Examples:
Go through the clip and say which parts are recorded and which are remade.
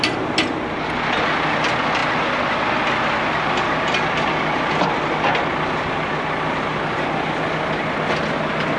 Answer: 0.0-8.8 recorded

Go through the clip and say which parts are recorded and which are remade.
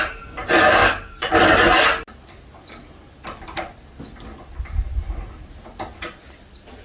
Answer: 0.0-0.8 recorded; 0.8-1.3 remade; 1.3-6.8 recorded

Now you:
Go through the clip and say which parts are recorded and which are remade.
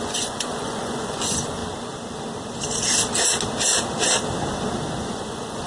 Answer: 0.0-1.6 remade; 1.6-5.0 recorded; 5.0-5.7 remade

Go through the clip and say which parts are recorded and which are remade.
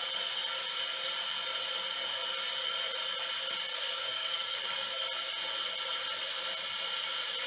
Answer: 0.0-3.7 recorded; 3.7-5.0 remade; 5.0-7.5 recorded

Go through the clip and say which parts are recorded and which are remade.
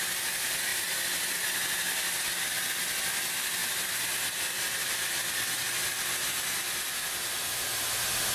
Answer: 0.0-8.3 recorded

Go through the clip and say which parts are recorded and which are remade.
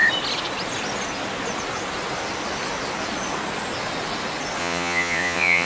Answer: 0.0-4.6 recorded; 4.6-5.7 remade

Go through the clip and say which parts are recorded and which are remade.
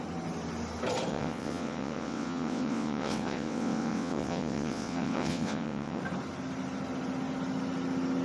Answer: 0.0-1.1 recorded; 1.1-6.0 remade; 6.0-8.2 recorded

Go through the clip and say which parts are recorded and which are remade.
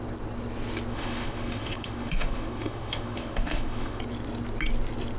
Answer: 0.0-0.9 recorded; 0.9-4.0 remade; 4.0-5.2 recorded